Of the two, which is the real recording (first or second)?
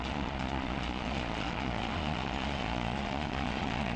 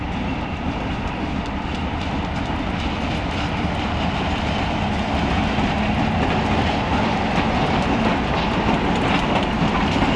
second